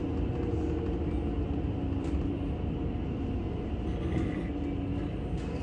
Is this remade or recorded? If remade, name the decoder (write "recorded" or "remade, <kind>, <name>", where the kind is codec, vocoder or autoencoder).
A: recorded